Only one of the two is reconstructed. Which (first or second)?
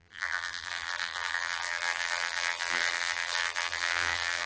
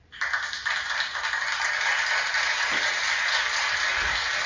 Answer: first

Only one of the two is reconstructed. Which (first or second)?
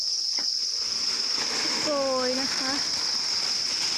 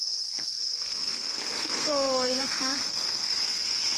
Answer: second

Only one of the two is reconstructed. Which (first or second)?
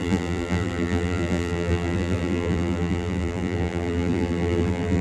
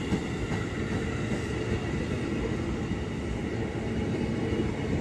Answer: first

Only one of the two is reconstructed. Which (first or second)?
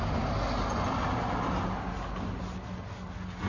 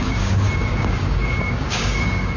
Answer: second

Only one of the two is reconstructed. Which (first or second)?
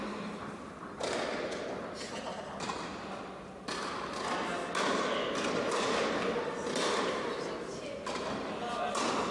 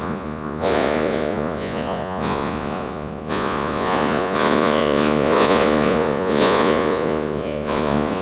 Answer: second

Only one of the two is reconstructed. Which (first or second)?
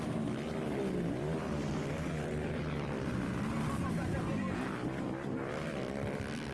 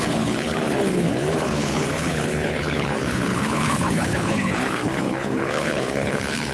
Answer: second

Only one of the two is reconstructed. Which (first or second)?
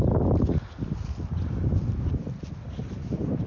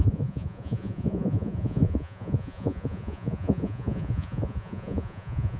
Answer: second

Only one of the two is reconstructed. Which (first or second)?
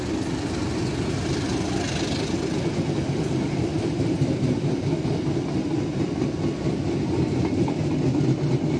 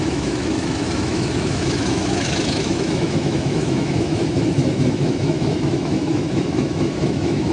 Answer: second